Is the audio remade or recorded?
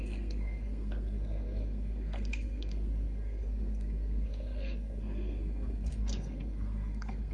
remade